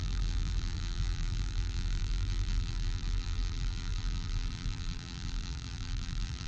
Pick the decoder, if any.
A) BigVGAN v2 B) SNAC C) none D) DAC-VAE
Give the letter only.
A